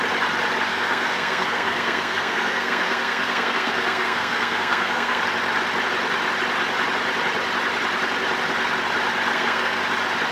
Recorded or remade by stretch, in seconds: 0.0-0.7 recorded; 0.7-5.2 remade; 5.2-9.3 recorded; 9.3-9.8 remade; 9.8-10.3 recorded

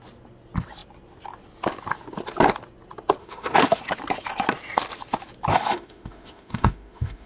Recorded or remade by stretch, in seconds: 0.0-3.2 recorded; 3.2-3.8 remade; 3.8-5.5 recorded; 5.5-7.3 remade

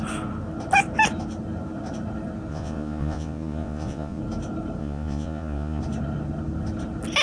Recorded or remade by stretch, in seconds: 0.0-2.5 recorded; 2.5-4.2 remade; 4.2-4.8 recorded; 4.8-5.8 remade; 5.8-7.2 recorded